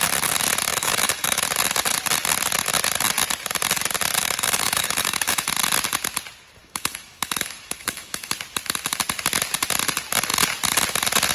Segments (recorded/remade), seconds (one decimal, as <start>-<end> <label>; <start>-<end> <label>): 0.0-0.7 recorded; 0.7-1.4 remade; 1.4-4.2 recorded; 4.2-5.5 remade; 5.5-6.6 recorded; 6.6-8.3 remade; 8.3-11.3 recorded